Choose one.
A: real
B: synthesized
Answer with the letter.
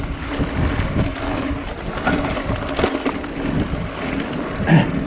A